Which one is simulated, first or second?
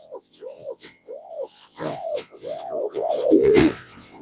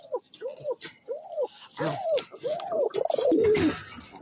first